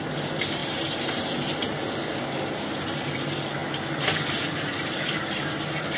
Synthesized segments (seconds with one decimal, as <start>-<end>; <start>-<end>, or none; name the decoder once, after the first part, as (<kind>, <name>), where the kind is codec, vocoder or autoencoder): 0.6-1.8 (vocoder, BigVGAN v2)